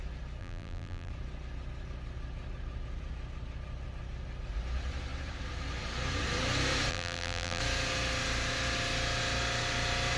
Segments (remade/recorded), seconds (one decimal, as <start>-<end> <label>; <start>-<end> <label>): 0.0-0.4 recorded; 0.4-1.1 remade; 1.1-6.9 recorded; 6.9-7.6 remade; 7.6-10.2 recorded